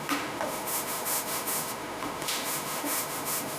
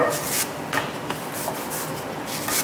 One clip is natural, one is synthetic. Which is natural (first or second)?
second